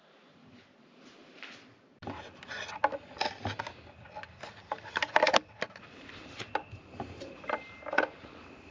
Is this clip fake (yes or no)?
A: no